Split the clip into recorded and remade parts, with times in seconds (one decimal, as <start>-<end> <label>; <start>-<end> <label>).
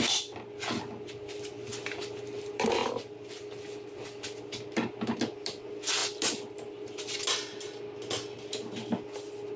0.0-9.6 recorded